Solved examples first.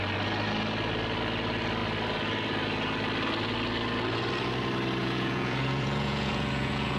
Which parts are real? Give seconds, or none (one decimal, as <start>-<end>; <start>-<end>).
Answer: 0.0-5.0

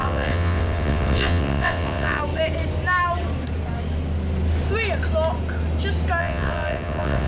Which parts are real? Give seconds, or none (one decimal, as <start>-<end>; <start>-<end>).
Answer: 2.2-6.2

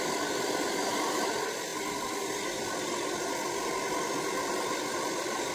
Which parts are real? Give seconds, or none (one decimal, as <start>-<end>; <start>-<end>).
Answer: 1.7-4.4

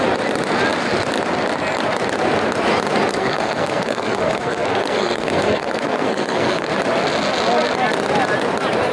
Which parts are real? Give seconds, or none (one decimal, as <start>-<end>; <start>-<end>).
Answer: 0.0-3.1; 6.7-8.9

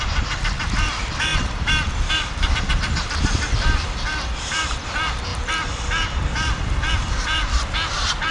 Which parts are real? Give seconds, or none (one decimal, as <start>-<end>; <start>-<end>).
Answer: 1.3-2.1

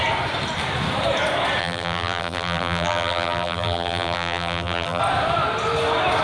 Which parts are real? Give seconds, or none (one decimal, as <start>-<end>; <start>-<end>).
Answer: 0.0-1.6; 5.0-6.2

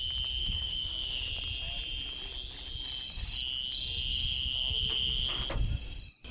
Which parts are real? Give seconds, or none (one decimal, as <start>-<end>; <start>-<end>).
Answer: 0.0-0.4; 1.3-4.1; 5.4-6.3

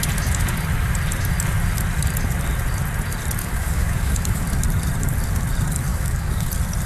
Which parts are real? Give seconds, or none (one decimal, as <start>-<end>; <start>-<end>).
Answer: 0.0-3.4; 4.4-5.9; 6.5-6.9